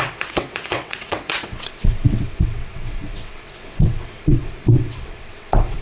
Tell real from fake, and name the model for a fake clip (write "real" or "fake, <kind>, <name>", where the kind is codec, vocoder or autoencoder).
fake, vocoder, WaveNeXt